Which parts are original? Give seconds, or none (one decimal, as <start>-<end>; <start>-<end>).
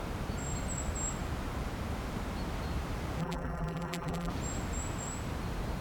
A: 0.0-3.2; 4.3-5.8